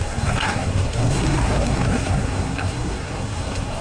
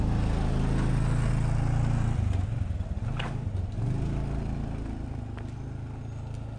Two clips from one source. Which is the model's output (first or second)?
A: first